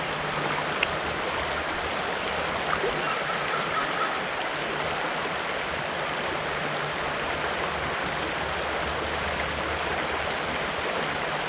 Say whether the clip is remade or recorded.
recorded